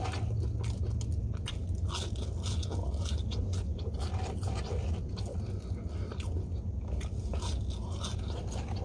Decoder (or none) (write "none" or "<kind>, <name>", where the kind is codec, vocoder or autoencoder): none